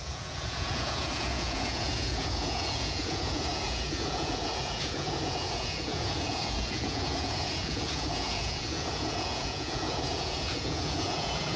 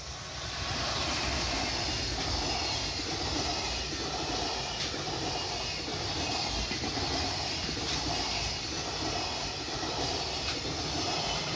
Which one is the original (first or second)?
second